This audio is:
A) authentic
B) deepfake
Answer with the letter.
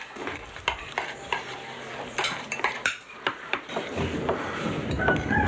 B